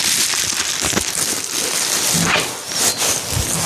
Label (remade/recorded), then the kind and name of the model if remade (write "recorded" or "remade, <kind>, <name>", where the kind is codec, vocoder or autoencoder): recorded